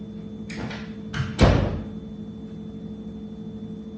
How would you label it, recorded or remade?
recorded